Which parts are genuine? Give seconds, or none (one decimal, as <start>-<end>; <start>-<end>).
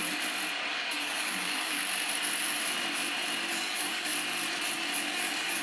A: 0.0-0.7; 1.8-3.5; 4.1-5.0